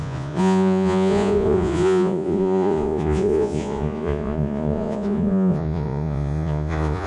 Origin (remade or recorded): remade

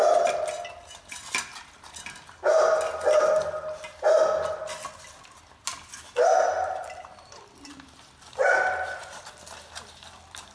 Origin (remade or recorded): recorded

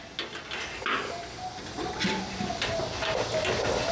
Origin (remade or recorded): recorded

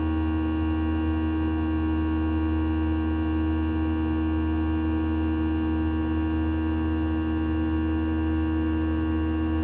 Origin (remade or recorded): recorded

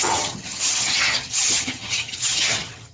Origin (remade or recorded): remade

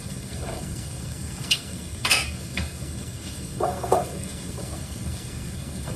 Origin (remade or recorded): remade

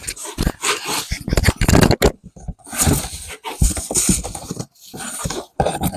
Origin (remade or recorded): recorded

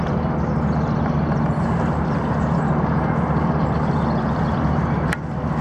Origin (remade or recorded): remade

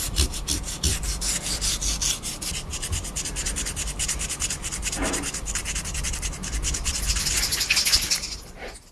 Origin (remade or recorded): recorded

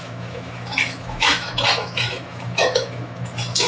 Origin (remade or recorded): remade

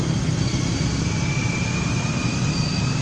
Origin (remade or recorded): recorded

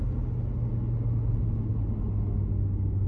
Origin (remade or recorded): recorded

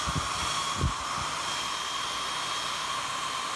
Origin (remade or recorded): recorded